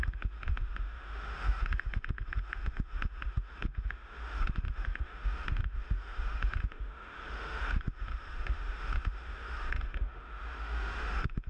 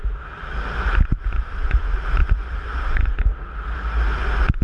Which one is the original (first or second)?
second